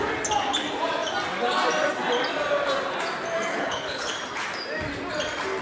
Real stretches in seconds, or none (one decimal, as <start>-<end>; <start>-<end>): 0.0-3.5; 4.1-5.6